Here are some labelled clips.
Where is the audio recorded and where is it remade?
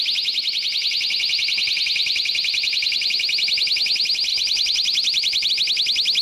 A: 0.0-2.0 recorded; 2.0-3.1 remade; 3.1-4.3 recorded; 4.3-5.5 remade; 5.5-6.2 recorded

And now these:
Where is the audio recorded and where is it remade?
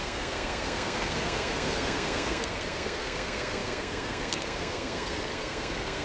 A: 0.0-6.0 remade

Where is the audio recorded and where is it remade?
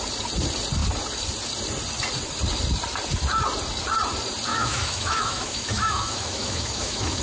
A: 0.0-4.5 recorded; 4.5-7.2 remade